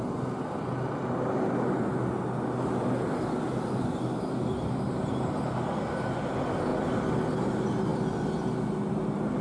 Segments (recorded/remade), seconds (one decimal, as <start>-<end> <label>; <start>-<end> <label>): 0.0-9.4 recorded